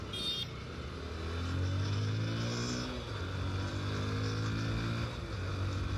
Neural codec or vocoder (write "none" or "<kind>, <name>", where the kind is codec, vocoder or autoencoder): none